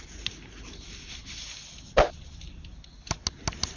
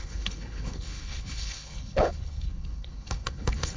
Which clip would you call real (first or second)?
first